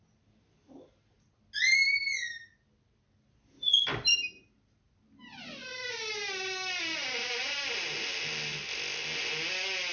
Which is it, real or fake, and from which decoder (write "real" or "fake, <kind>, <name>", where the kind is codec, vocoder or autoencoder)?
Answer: real